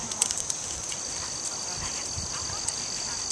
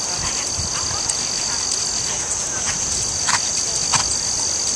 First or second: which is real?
second